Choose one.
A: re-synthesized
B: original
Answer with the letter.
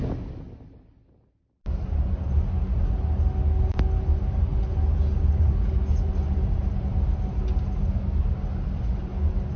B